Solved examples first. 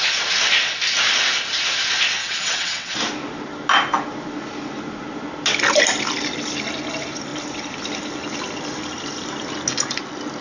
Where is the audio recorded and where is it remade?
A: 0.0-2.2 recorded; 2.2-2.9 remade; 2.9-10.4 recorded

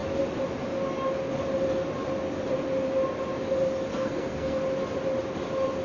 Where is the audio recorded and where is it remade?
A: 0.0-3.9 recorded; 3.9-4.6 remade; 4.6-5.8 recorded